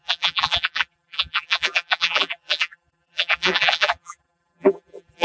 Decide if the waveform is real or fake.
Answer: fake